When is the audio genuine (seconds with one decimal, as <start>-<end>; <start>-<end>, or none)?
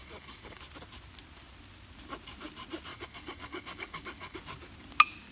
0.6-2.9; 4.4-5.3